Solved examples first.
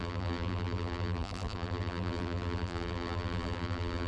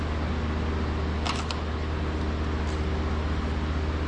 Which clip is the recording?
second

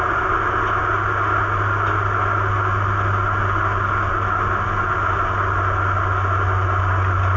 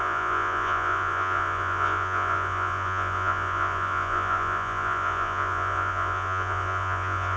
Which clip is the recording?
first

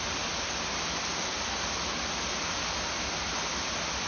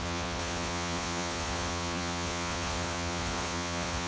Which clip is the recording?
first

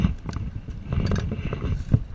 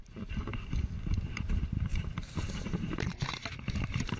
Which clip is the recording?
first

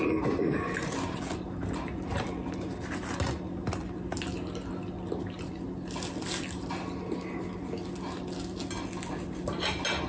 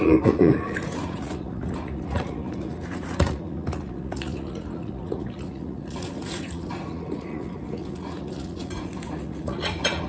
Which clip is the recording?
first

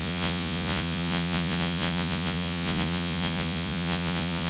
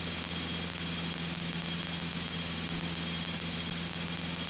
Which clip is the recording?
second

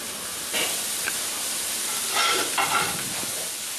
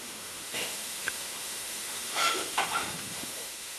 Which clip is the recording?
first